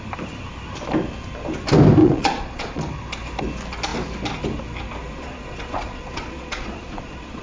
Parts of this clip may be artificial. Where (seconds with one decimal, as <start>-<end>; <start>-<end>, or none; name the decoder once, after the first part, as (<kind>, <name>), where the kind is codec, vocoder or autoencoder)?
2.0-2.8 (vocoder, Vocos); 5.0-7.4